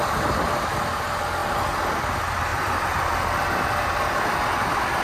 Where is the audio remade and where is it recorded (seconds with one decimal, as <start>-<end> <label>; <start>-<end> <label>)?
0.0-2.5 recorded; 2.5-3.3 remade; 3.3-5.0 recorded